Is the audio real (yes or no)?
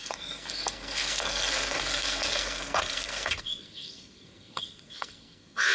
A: no